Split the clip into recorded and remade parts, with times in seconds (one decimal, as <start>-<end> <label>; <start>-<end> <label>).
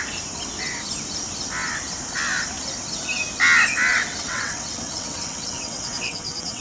0.0-3.9 recorded; 3.9-6.6 remade